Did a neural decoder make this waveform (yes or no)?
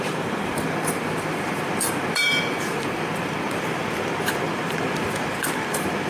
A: yes